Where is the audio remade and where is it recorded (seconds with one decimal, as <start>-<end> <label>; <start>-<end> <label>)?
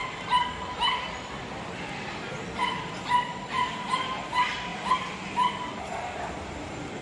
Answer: 0.0-7.0 remade